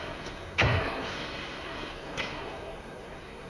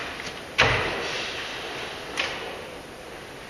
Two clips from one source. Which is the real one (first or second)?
second